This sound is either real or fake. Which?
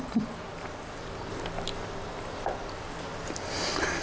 real